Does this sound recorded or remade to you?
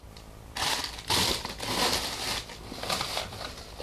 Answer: recorded